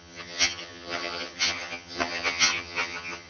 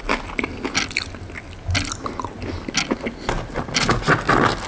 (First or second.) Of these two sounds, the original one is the second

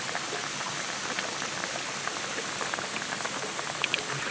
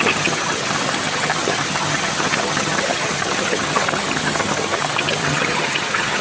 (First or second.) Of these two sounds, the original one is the first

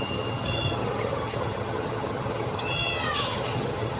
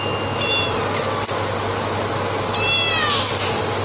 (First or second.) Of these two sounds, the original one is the second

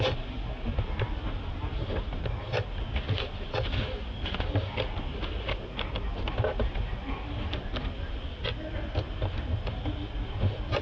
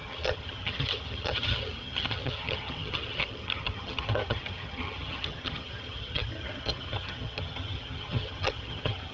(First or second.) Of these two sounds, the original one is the first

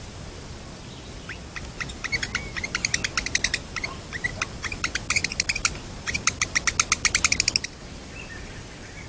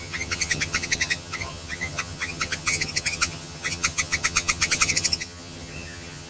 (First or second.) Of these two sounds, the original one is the first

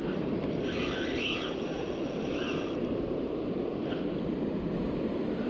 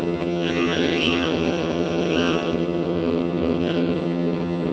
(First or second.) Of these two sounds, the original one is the first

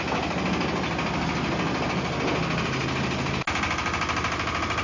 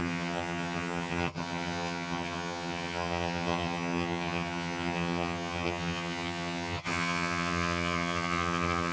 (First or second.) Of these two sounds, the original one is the first